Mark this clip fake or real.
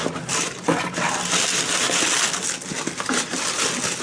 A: real